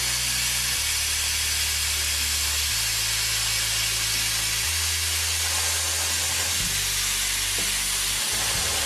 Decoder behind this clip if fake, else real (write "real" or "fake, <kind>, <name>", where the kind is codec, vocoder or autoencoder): real